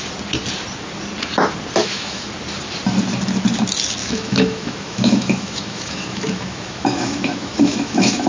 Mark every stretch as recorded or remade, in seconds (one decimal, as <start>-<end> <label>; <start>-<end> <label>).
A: 0.0-1.8 recorded; 1.8-2.3 remade; 2.3-4.0 recorded; 4.0-8.3 remade